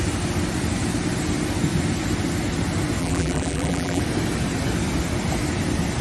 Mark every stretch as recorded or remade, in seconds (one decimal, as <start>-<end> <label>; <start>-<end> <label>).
0.0-3.0 recorded; 3.0-4.0 remade; 4.0-6.0 recorded